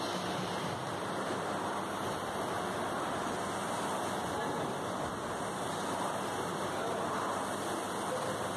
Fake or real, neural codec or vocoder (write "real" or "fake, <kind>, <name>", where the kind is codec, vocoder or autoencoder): real